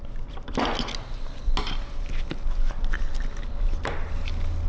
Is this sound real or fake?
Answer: real